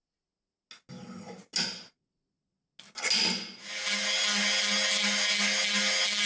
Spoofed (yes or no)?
no